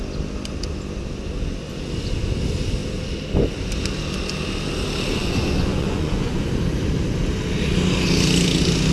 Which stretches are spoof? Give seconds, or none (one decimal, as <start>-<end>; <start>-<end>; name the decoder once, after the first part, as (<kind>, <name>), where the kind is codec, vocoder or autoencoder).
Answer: 5.2-6.5 (vocoder, Vocos)